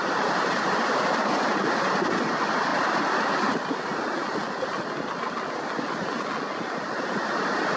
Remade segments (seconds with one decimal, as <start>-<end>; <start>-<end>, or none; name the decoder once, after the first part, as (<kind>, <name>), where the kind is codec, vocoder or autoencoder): none